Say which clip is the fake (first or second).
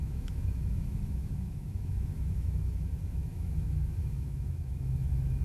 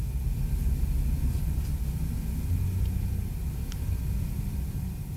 first